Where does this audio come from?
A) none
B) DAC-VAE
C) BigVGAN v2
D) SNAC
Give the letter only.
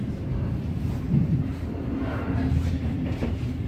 C